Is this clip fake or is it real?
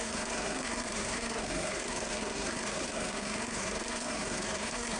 fake